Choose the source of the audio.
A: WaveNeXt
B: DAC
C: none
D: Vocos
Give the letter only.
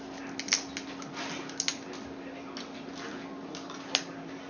C